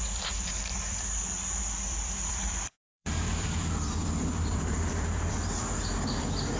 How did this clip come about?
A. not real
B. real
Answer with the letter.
A